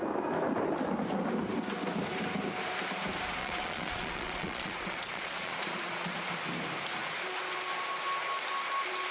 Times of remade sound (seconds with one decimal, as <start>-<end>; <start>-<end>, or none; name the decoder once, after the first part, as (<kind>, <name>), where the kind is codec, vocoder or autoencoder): 3.4-6.1 (vocoder, Vocos)